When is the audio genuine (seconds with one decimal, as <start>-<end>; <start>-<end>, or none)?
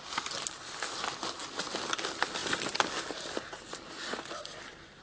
0.0-5.0